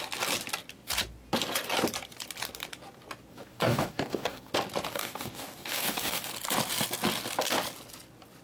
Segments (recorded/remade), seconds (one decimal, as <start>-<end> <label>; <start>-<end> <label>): 0.0-3.3 recorded; 3.3-4.5 remade; 4.5-4.9 recorded; 4.9-6.3 remade; 6.3-8.4 recorded